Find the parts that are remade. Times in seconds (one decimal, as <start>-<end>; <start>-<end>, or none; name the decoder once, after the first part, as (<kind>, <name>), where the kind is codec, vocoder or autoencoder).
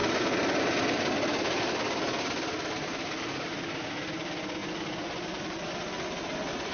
none